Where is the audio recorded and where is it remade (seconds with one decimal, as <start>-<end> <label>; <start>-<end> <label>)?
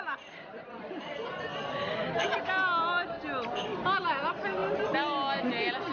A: 0.0-1.5 remade; 1.5-4.0 recorded; 4.0-4.6 remade; 4.6-5.5 recorded; 5.5-5.9 remade